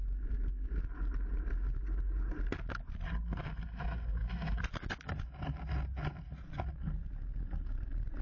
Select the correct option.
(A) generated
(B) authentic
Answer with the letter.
B